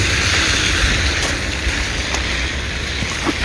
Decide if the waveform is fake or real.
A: real